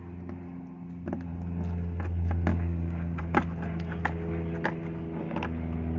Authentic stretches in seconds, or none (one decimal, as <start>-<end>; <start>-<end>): 0.0-2.5; 3.2-6.0